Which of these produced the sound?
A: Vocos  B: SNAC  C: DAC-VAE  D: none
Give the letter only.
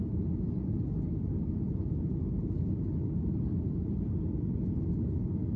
D